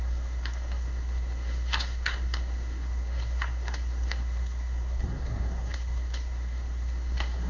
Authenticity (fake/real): fake